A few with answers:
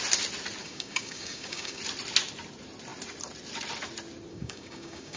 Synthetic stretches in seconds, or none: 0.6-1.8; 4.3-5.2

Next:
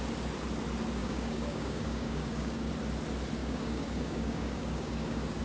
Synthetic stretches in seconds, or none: 1.0-2.7; 3.4-5.4

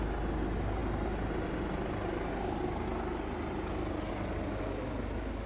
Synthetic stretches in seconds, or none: none

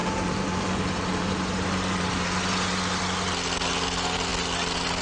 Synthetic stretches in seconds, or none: 0.0-3.0